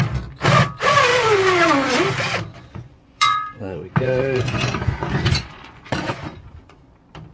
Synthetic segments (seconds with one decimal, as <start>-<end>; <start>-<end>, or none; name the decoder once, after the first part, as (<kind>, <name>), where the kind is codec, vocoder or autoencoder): 2.5-6.8 (vocoder, Vocos)